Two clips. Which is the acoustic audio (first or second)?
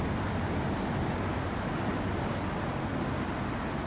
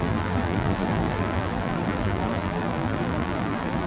first